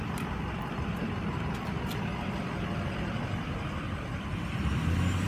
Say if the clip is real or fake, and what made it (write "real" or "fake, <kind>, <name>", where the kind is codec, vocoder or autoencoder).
real